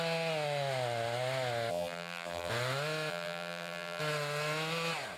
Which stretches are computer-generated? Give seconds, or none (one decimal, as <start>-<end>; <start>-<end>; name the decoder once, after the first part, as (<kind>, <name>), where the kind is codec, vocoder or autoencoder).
1.7-2.5 (vocoder, BigVGAN v2); 3.1-4.0